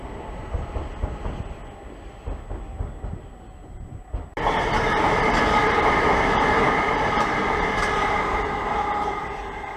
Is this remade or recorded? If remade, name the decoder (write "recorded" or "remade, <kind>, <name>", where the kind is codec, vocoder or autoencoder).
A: recorded